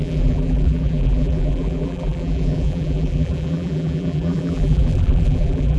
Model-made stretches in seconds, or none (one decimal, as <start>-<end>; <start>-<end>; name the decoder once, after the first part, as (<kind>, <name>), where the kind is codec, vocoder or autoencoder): 0.0-5.8 (vocoder, BigVGAN v2)